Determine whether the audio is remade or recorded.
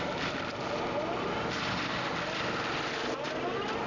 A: recorded